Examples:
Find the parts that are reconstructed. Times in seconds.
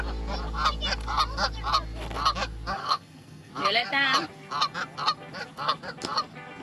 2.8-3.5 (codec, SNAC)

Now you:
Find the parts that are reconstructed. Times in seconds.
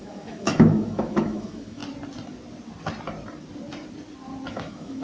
0.0-1.8 (autoencoder, DAC-VAE); 4.5-5.0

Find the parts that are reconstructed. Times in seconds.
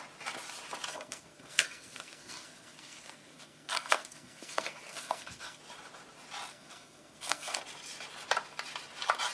0.9-5.6 (codec, SNAC); 6.5-7.6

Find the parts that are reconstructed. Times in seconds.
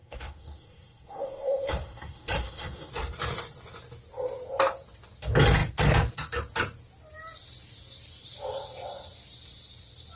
0.0-2.9 (codec, SNAC)